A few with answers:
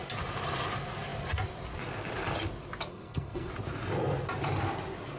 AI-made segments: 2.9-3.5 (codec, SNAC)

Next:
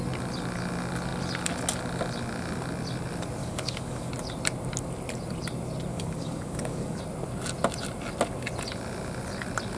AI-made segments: 3.4-4.1 (codec, DAC); 5.9-7.0

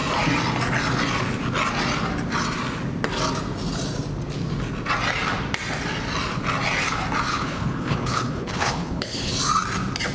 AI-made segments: 7.3-9.3 (codec, HILCodec)

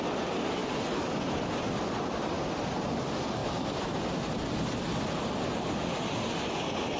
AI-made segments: none

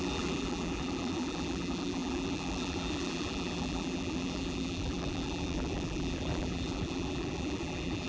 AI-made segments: 0.0-8.1 (vocoder, BigVGAN v2)

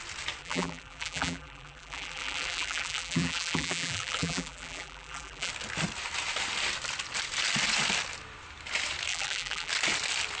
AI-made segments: 0.4-5.5 (vocoder, BigVGAN v2); 9.1-9.7